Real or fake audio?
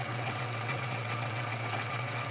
fake